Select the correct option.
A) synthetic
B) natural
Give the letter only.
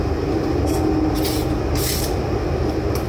B